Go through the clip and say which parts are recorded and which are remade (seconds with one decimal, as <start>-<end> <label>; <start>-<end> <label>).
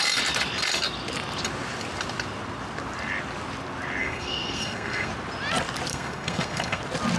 0.0-4.0 recorded; 4.0-5.1 remade; 5.1-5.9 recorded; 5.9-6.8 remade; 6.8-7.2 recorded